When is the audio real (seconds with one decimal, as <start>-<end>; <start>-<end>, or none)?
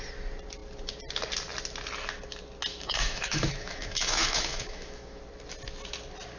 0.0-2.7; 5.2-6.4